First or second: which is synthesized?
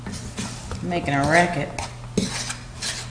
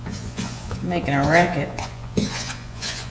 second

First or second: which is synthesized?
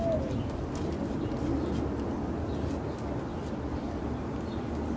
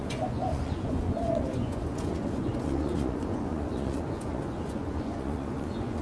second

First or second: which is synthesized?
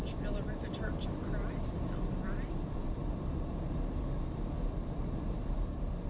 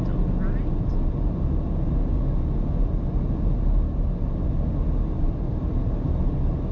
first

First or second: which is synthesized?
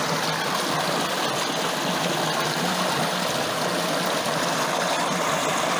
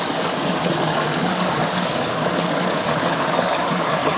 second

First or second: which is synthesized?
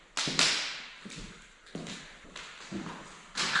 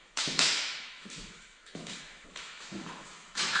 second